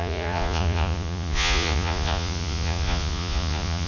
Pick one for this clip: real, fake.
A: fake